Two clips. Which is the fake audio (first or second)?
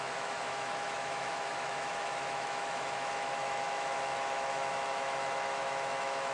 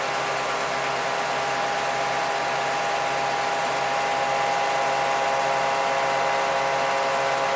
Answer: first